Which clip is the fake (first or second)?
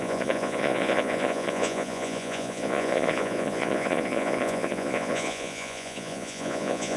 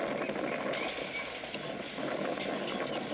first